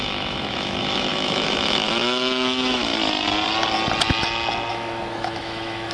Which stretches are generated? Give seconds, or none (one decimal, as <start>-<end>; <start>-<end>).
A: 0.0-2.9; 4.7-5.9